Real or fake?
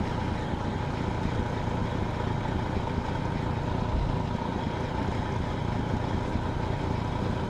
real